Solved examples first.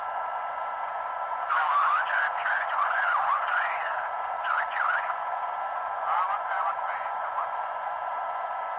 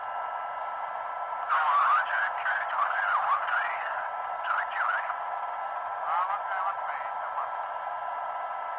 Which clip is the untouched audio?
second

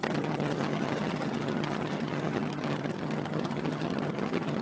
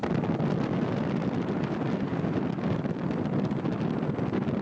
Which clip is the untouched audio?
second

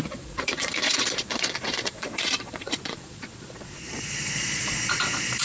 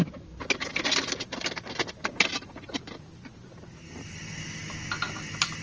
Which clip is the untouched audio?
second